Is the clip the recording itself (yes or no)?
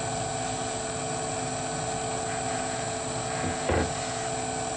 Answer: yes